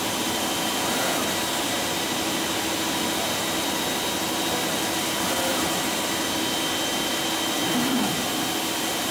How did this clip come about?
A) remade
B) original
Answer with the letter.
B